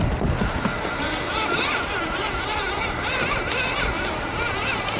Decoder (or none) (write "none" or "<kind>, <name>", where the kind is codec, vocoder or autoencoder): none